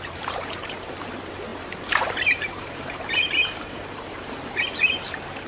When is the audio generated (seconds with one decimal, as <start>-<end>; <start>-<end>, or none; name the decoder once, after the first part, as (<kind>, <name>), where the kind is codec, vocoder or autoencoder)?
0.0-5.5 (vocoder, BigVGAN v2)